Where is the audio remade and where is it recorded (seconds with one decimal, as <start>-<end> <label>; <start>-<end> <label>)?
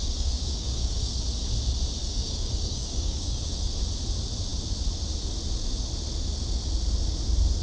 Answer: 0.0-1.2 remade; 1.2-2.0 recorded; 2.0-3.7 remade; 3.7-7.6 recorded